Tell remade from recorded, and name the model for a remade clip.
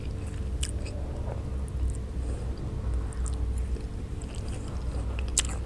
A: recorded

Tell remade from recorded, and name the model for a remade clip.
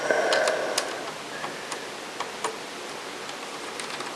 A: recorded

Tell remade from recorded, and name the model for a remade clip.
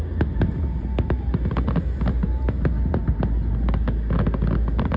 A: recorded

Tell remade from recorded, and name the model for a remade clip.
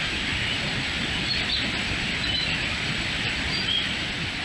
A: remade, vocoder, BigVGAN v2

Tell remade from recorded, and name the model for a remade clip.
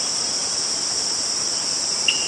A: remade, vocoder, BigVGAN v2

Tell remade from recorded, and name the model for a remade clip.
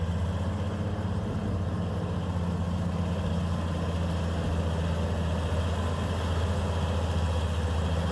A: recorded